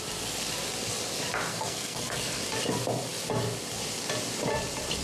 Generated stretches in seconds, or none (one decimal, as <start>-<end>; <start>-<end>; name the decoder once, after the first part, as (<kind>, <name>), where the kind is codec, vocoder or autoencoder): 1.5-2.4 (codec, SNAC)